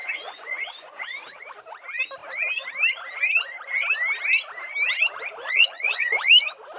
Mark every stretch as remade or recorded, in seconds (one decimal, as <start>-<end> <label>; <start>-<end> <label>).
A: 0.0-1.0 remade; 1.0-5.4 recorded; 5.4-6.3 remade; 6.3-6.8 recorded